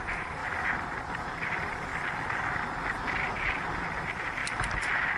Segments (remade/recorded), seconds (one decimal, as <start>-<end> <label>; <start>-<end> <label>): 0.0-1.9 remade; 1.9-3.9 recorded; 3.9-4.4 remade; 4.4-5.2 recorded